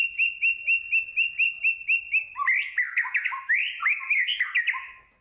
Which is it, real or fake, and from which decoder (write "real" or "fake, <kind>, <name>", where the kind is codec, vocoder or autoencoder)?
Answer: real